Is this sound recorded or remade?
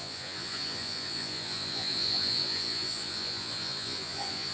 remade